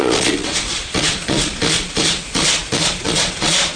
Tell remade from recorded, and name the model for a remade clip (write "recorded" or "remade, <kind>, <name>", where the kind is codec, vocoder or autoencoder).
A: remade, vocoder, Vocos